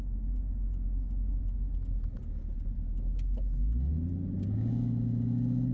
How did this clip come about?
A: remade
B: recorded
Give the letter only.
B